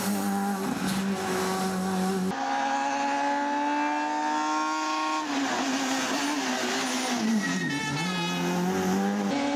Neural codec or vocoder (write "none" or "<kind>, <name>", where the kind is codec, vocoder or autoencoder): none